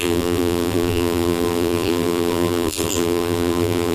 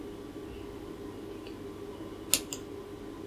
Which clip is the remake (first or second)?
first